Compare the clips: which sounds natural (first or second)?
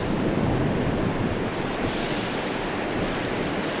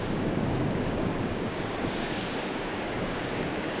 first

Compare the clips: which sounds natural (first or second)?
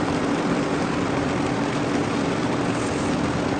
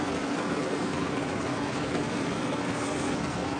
first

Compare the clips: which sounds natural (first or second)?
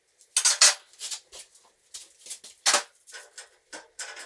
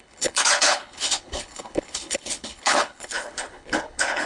first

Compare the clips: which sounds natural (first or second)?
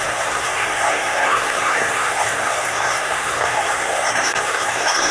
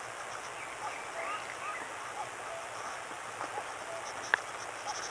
second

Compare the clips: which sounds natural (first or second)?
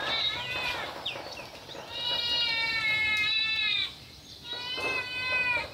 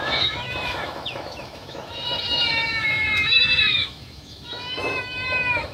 first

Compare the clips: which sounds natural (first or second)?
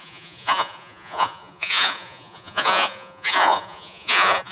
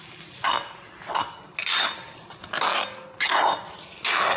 second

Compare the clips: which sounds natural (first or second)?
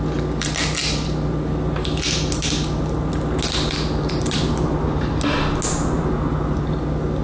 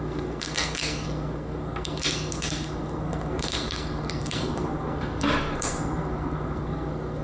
first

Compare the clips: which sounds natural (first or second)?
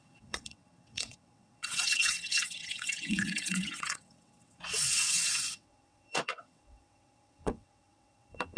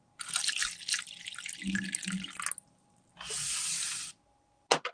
second